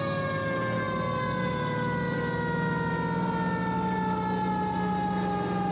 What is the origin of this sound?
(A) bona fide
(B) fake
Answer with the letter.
A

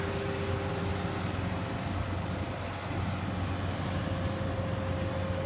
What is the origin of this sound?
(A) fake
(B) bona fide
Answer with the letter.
B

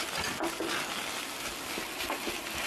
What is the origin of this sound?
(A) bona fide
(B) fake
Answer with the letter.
A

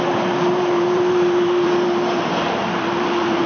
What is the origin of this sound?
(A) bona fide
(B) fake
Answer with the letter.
B